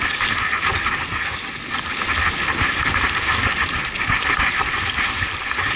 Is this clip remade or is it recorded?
recorded